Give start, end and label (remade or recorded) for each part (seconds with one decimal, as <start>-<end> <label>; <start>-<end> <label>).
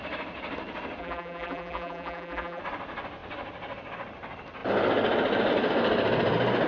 0.0-1.0 recorded; 1.0-2.6 remade; 2.6-6.7 recorded